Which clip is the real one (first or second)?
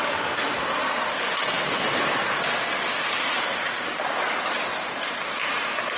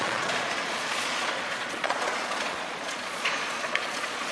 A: first